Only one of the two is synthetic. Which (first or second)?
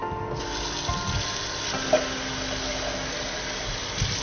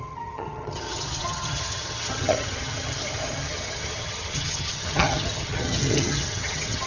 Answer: second